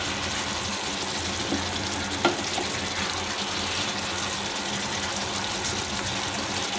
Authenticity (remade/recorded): recorded